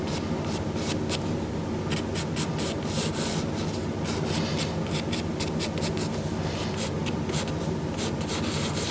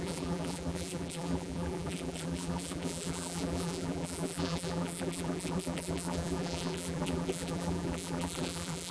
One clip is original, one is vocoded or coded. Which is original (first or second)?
first